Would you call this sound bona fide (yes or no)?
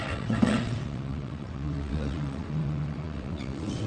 no